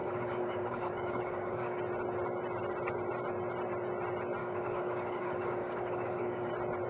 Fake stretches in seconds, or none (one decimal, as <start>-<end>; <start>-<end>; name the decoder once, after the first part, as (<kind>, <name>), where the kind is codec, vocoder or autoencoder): 0.0-1.8 (codec, DAC); 4.4-6.5